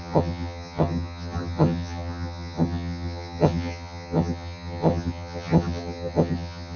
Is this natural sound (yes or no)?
no